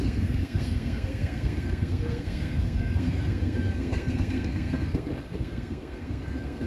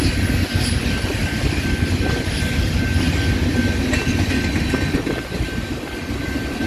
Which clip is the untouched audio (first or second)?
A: second